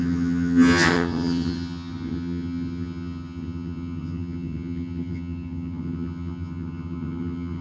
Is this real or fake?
fake